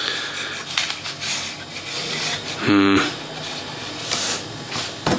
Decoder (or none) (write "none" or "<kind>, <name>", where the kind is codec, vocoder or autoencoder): none